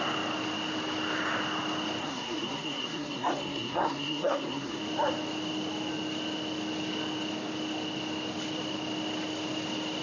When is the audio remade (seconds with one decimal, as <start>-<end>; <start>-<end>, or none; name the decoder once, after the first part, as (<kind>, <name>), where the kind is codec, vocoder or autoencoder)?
2.0-4.8 (codec, SNAC)